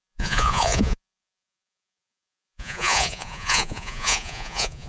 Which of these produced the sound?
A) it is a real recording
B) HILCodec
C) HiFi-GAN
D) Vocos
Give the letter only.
D